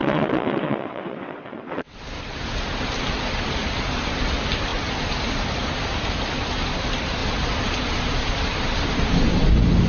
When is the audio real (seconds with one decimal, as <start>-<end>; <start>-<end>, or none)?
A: 2.0-9.9